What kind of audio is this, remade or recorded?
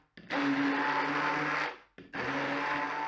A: recorded